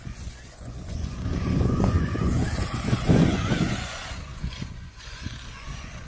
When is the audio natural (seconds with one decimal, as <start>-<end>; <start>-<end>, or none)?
none